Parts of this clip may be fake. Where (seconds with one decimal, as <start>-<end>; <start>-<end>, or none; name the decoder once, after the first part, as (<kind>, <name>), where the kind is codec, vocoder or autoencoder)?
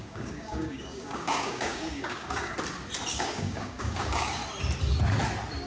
0.0-2.5 (codec, DAC); 3.1-4.4